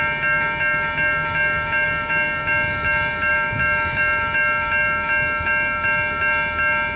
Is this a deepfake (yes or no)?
no